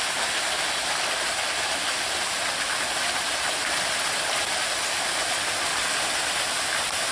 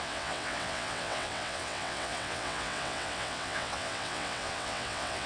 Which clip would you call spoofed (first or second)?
second